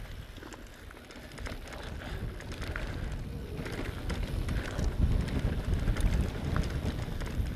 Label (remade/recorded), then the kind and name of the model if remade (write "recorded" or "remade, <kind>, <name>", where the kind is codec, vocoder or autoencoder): recorded